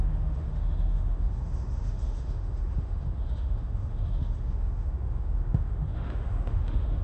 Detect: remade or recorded remade